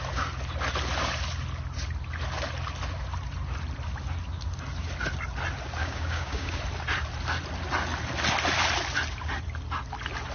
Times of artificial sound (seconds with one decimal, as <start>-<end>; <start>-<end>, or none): 5.8-6.6